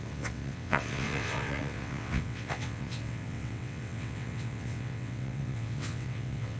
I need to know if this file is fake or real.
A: fake